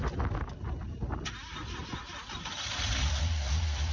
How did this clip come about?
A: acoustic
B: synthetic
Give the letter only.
A